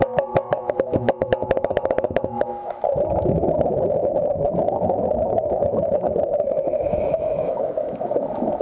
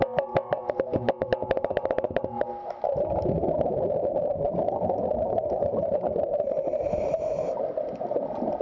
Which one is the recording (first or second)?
second